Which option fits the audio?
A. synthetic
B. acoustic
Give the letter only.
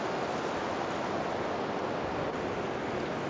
B